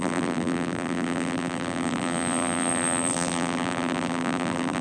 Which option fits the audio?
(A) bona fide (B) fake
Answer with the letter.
B